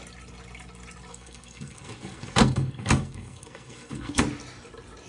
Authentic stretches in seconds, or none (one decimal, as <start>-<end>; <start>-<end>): 0.0-1.1; 4.2-5.1